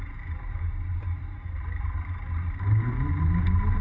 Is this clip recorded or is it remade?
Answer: remade